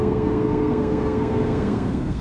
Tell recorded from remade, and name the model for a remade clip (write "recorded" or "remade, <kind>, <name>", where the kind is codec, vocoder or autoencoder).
remade, codec, SNAC